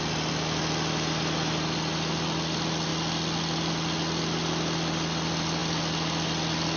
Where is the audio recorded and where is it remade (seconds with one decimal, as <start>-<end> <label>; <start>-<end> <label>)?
0.0-6.8 recorded